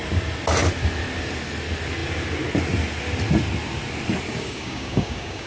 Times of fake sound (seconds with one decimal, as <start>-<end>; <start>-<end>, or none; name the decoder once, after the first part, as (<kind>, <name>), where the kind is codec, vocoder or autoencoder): 4.3-5.5 (codec, DAC)